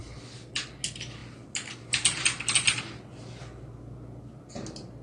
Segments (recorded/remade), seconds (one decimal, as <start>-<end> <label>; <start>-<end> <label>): 0.0-5.0 recorded